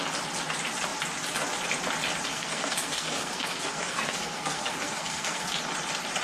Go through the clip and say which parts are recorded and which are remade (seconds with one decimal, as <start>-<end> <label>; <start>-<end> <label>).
0.0-2.3 recorded; 2.3-5.5 remade; 5.5-6.2 recorded